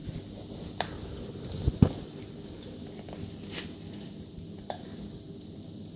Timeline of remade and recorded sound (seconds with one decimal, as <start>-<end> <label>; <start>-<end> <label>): 0.0-6.0 recorded